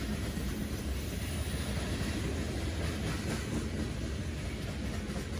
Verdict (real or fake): real